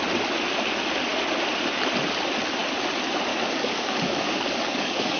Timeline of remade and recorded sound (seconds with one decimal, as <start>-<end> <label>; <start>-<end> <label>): 0.0-3.3 recorded; 3.3-5.2 remade

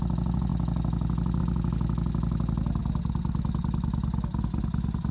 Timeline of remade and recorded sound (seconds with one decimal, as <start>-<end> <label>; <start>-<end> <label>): 0.0-5.1 recorded

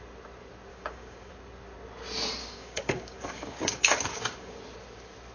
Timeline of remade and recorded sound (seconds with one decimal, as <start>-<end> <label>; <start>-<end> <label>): 0.0-0.7 recorded; 0.7-1.3 remade; 1.3-2.4 recorded; 2.4-4.6 remade; 4.6-5.3 recorded

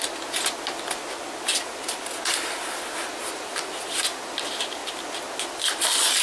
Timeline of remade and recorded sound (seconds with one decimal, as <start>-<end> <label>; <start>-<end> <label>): 0.0-6.2 recorded

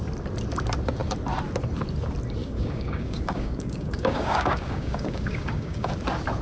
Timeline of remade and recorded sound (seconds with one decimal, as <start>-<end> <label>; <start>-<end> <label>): 0.0-2.4 recorded; 2.4-5.9 remade; 5.9-6.4 recorded

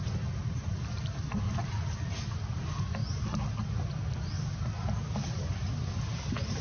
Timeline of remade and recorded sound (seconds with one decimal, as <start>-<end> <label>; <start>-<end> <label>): 0.0-6.6 recorded